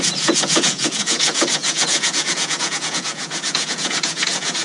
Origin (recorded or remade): remade